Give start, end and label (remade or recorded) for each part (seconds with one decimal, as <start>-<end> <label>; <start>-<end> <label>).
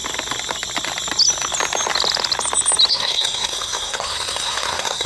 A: 0.0-2.9 recorded; 2.9-5.1 remade